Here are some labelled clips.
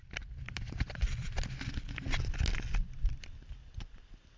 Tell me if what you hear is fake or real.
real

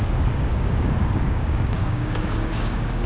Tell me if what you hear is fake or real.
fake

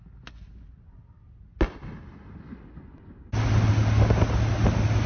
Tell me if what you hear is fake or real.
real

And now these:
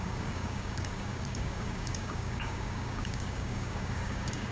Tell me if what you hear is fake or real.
fake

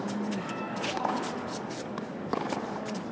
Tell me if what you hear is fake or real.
fake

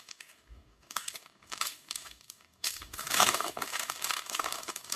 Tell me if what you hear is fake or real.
fake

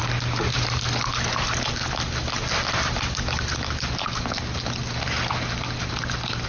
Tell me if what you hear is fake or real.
real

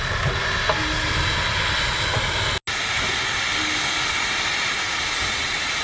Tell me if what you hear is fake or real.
real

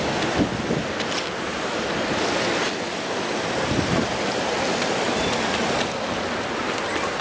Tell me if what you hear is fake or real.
real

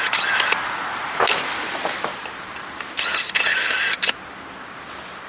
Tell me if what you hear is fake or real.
real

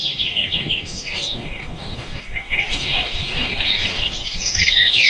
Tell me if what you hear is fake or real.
fake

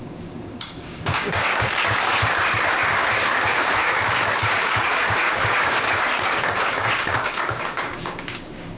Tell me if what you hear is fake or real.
fake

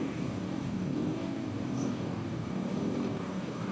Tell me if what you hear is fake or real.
fake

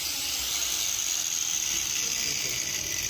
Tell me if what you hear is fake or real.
real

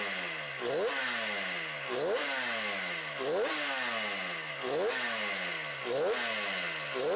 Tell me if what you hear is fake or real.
real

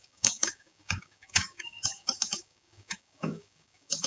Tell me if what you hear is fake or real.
fake